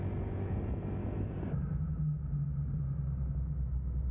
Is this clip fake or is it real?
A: real